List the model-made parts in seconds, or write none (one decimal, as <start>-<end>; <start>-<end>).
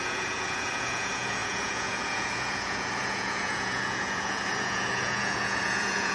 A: 0.0-6.1